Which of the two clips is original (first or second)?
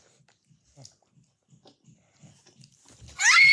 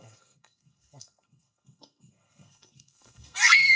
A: first